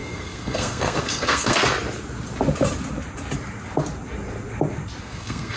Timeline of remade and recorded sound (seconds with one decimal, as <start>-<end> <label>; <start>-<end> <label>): 0.0-1.6 remade; 1.6-5.0 recorded; 5.0-5.6 remade